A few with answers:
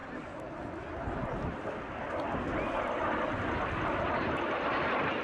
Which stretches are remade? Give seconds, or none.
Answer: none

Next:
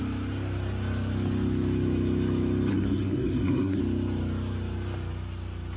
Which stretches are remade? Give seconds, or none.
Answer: 2.7-3.8 (codec, SNAC)

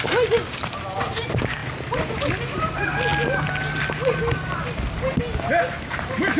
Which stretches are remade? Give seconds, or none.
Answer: none

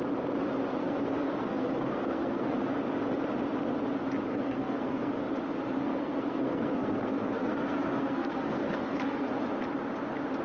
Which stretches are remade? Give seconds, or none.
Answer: 0.8-2.5 (codec, SNAC); 4.3-5.1; 5.8-9.3

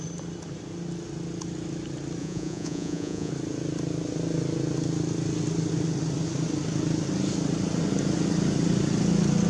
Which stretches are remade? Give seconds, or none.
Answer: 2.2-3.3 (vocoder, Vocos)

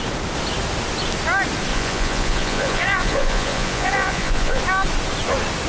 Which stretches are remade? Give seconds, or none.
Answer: 1.7-4.6 (vocoder, Vocos)